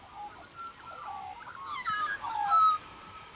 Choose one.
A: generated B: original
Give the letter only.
B